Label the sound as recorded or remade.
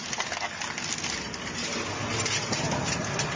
recorded